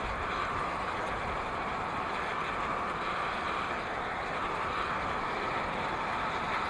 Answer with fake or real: fake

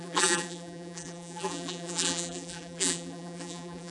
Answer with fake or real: fake